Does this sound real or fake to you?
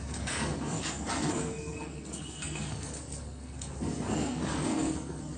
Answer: fake